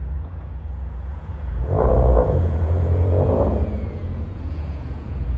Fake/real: fake